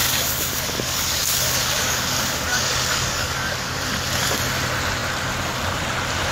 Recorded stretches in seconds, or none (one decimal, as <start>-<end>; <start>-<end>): 3.8-6.3